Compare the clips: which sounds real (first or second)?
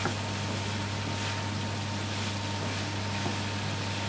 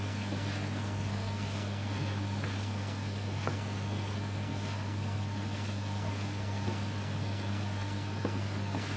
first